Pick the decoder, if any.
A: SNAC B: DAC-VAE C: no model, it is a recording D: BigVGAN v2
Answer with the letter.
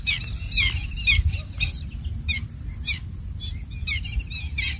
C